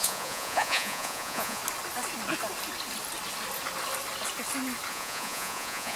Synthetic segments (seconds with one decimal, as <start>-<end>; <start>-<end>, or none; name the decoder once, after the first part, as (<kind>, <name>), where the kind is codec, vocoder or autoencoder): 0.0-1.6 (vocoder, Vocos); 4.9-6.0